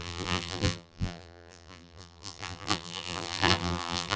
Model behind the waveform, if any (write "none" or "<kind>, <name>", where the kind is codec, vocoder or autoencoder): vocoder, BigVGAN v2